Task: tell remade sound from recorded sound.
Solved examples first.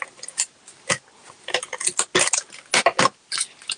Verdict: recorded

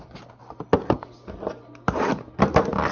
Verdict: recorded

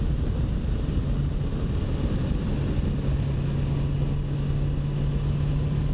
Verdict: recorded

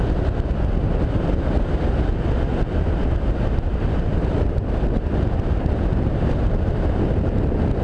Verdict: recorded